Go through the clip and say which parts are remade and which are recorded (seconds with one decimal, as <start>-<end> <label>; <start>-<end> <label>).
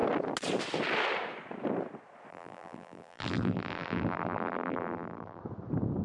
0.0-2.3 recorded; 2.3-5.4 remade; 5.4-6.0 recorded